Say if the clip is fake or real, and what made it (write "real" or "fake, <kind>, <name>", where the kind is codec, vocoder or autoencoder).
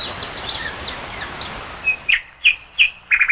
real